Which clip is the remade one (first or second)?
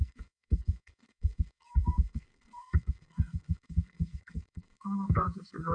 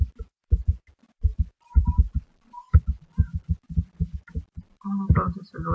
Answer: first